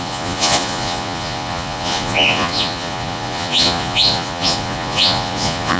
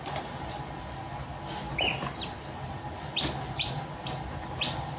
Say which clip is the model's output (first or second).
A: first